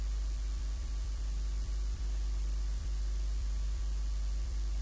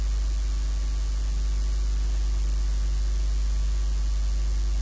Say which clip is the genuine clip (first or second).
second